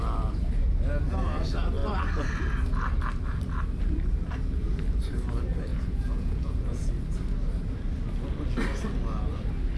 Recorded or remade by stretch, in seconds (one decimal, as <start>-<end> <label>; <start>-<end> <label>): 0.0-5.7 recorded; 5.7-6.9 remade; 6.9-9.8 recorded